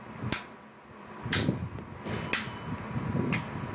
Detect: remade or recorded recorded